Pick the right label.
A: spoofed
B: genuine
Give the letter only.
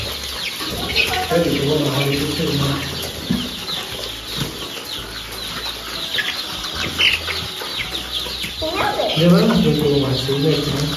B